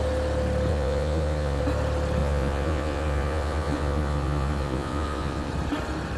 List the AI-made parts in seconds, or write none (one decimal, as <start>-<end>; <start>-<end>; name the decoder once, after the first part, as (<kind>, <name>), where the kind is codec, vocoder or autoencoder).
0.7-1.6 (vocoder, Vocos); 2.2-5.5